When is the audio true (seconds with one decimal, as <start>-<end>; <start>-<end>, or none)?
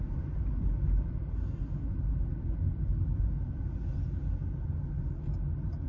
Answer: 0.0-5.9